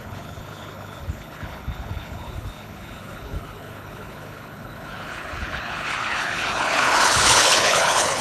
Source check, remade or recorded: remade